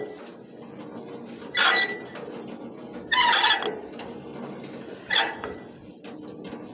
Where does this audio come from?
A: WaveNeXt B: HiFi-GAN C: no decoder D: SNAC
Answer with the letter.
C